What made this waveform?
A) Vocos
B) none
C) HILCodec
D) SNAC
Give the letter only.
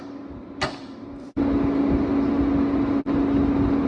B